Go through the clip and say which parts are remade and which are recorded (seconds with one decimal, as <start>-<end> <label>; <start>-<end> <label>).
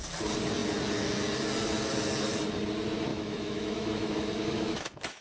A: 0.0-3.1 recorded; 3.1-5.2 remade